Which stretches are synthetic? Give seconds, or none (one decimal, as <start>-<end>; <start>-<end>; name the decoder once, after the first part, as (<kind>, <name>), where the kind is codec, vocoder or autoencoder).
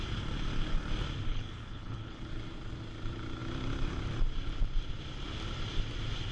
1.3-2.3 (codec, HILCodec)